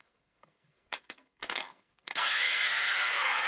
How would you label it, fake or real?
fake